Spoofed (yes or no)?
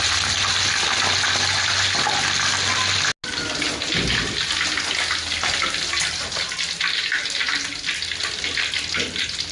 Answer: no